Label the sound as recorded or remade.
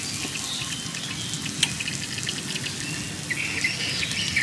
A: recorded